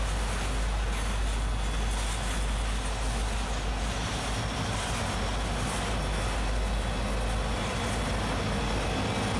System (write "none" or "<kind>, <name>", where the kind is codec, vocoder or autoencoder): none